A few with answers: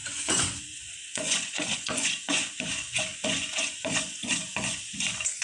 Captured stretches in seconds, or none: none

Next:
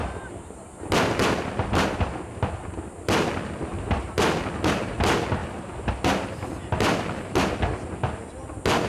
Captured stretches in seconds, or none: 0.0-8.9

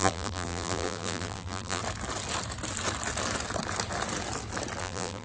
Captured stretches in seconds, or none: 1.8-4.8

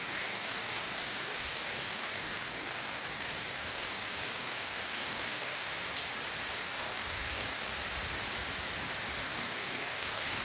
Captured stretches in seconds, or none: 5.7-6.6; 7.7-9.2

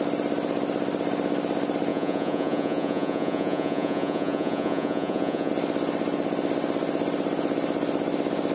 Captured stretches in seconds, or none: 0.0-1.9; 5.5-8.5